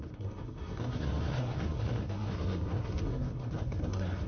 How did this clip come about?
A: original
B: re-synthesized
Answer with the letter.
B